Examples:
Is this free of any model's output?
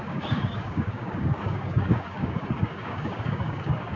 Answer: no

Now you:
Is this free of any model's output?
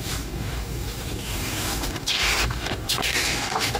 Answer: no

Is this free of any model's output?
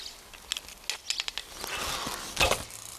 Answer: yes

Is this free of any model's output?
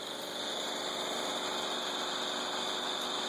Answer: yes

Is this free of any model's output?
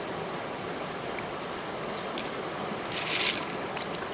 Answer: yes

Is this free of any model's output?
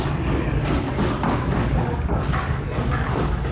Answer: no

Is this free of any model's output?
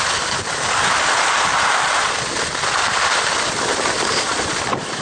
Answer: yes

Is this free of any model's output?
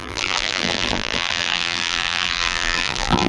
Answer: no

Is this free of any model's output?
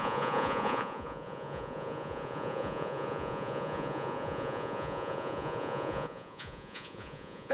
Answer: no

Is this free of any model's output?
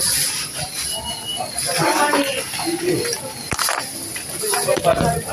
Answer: no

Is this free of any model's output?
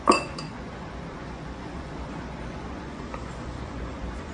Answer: no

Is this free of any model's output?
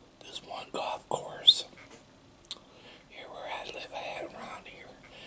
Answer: yes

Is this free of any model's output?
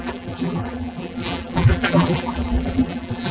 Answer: no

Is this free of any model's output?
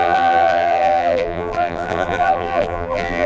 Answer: no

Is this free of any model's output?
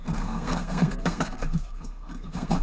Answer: no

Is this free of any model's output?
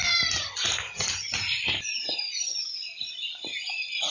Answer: yes